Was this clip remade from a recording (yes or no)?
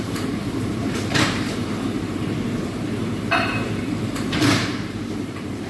yes